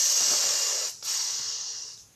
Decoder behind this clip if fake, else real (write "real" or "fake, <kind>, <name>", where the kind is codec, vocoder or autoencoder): real